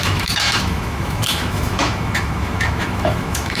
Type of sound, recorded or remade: remade